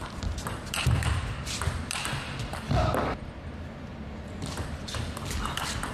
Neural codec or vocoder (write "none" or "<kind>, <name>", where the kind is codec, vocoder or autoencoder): none